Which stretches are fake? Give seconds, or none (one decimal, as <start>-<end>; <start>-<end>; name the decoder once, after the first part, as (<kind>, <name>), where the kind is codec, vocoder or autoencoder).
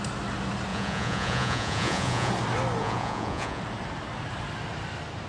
0.7-2.3 (vocoder, Vocos); 2.8-3.6